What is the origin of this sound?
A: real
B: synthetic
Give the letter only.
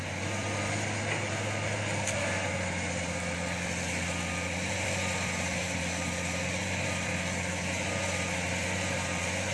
A